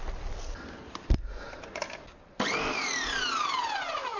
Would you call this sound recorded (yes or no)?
yes